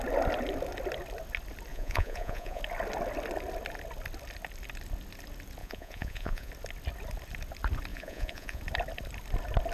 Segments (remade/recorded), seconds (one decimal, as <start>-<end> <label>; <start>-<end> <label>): 0.0-1.7 recorded; 1.7-2.6 remade; 2.6-5.6 recorded; 5.6-6.5 remade; 6.5-7.9 recorded; 7.9-8.6 remade; 8.6-9.7 recorded